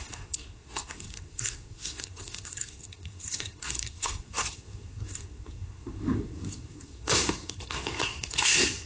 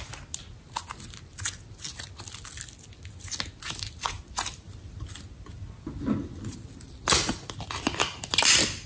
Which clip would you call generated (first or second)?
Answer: first